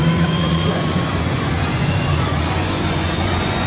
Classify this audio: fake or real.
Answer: fake